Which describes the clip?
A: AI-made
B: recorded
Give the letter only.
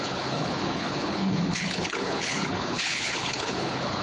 A